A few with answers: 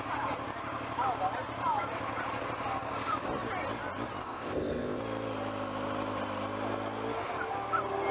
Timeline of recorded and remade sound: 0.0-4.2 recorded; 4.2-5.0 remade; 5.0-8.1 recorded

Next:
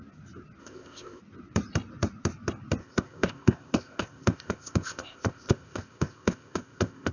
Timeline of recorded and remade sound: 0.0-0.6 recorded; 0.6-1.2 remade; 1.2-2.8 recorded; 2.8-7.1 remade